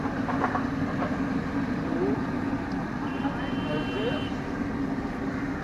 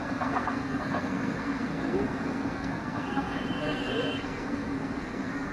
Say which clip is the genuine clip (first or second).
first